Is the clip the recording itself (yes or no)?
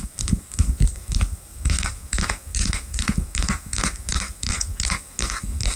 no